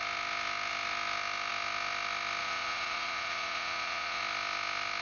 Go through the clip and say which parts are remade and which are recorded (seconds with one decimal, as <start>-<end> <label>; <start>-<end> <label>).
0.0-2.4 recorded; 2.4-4.2 remade; 4.2-5.0 recorded